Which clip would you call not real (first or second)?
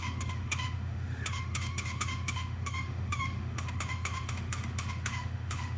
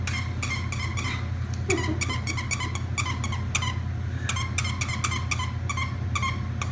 first